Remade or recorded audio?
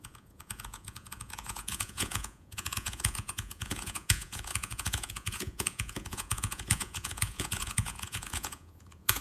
remade